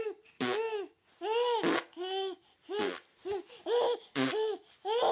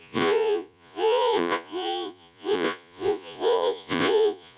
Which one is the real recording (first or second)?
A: first